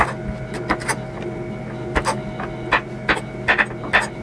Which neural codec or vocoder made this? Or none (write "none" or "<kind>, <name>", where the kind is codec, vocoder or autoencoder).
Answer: none